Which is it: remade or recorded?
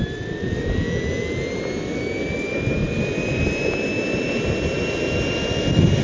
recorded